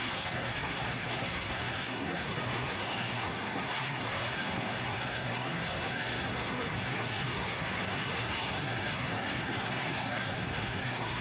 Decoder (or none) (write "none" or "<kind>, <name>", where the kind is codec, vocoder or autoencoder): codec, SNAC